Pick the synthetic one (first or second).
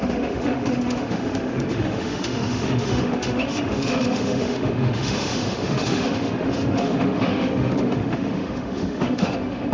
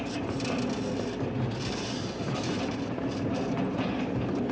first